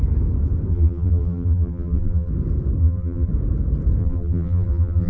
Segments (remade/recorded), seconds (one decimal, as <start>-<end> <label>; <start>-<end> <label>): 0.0-0.7 recorded; 0.7-2.3 remade; 2.3-2.8 recorded; 2.8-3.3 remade; 3.3-4.0 recorded; 4.0-5.1 remade